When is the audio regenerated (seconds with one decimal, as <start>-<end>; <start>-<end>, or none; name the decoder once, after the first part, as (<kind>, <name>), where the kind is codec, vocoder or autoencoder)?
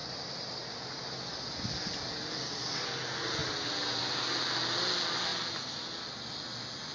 none